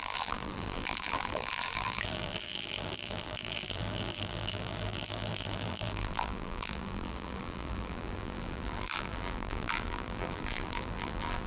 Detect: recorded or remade remade